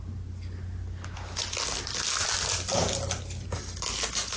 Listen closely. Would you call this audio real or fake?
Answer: real